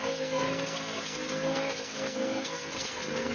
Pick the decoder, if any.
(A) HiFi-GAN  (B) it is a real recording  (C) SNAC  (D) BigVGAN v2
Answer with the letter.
C